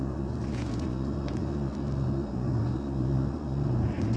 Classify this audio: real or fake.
fake